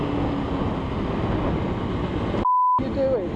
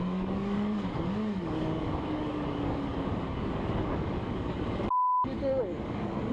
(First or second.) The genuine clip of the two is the first